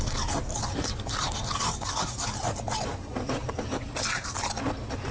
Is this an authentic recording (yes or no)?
yes